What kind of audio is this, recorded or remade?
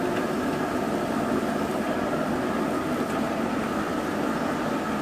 recorded